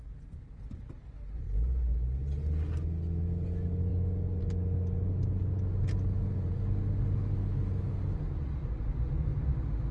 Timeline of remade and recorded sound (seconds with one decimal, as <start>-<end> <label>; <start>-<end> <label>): 0.0-9.9 recorded